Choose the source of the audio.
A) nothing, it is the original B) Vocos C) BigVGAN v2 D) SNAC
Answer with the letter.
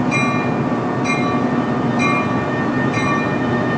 A